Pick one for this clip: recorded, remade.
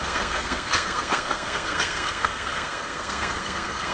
remade